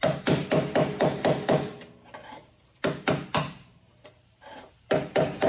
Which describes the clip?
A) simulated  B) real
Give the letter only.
A